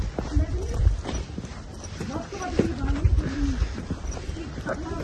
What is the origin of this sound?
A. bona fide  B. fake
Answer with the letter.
B